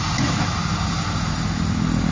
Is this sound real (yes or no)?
yes